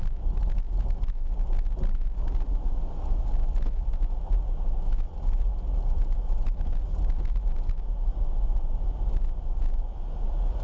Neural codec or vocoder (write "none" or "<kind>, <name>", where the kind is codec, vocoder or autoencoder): none